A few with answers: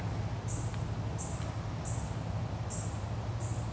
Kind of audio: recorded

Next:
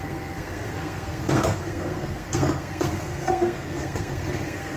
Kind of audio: remade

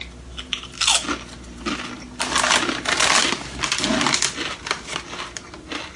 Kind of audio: recorded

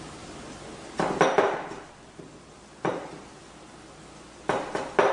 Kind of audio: recorded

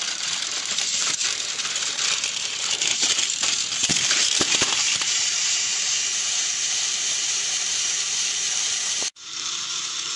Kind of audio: remade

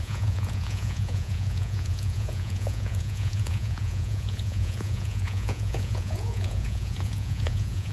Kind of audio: remade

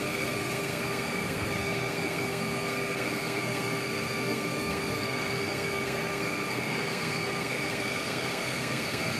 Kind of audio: remade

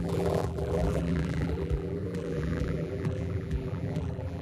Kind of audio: remade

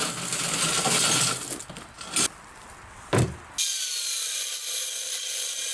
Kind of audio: recorded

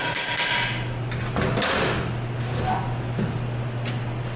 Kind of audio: recorded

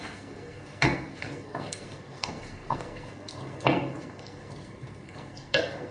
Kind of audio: remade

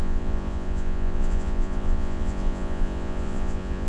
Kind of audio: remade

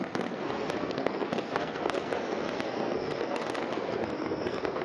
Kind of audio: remade